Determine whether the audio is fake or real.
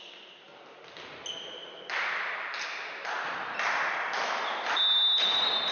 real